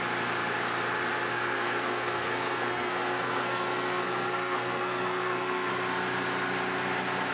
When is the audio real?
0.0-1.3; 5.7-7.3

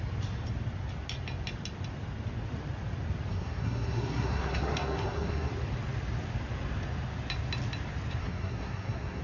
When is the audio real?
0.0-3.3; 5.5-8.2

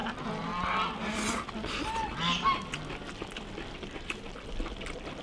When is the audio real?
0.0-5.2

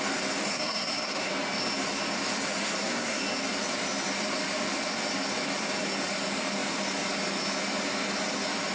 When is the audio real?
0.0-0.5; 1.3-2.6; 3.2-8.7

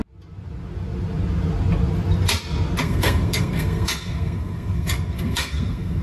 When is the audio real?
0.0-2.8

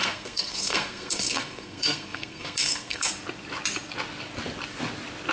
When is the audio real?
3.1-5.3